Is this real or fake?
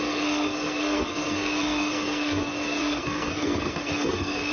fake